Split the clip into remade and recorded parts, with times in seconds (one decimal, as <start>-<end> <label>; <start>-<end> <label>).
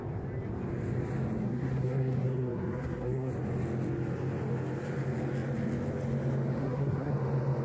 0.0-1.4 recorded; 1.4-3.3 remade; 3.3-6.6 recorded; 6.6-7.1 remade; 7.1-7.6 recorded